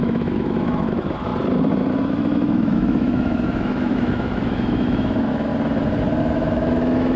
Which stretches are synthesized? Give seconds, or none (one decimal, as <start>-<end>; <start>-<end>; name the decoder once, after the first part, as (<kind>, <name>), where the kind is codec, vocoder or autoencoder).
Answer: 0.0-1.3 (autoencoder, DAC-VAE); 2.0-5.5; 6.2-7.2